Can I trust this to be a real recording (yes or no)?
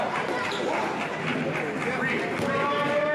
yes